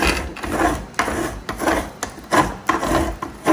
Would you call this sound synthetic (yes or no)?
no